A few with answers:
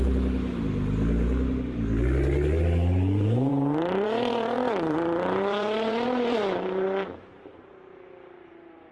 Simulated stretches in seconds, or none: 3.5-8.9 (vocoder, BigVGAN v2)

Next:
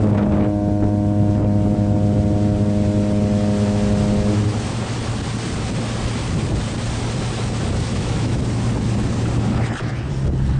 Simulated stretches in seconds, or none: 7.9-8.4 (autoencoder, DAC-VAE)